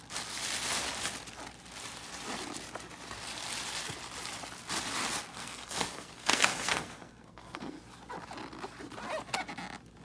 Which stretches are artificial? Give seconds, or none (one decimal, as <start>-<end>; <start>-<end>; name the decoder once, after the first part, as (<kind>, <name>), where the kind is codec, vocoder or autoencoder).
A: 5.3-7.8 (codec, SNAC)